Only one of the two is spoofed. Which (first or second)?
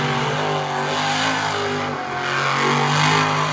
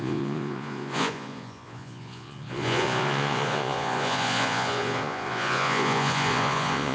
second